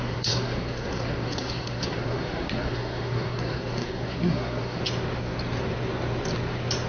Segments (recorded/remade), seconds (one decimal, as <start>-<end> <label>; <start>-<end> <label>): 0.0-4.8 remade; 4.8-6.9 recorded